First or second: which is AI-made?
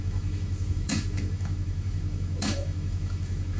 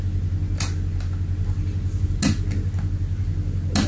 first